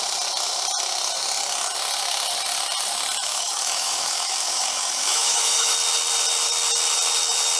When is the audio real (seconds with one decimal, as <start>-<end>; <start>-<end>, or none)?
0.0-3.2; 5.7-7.6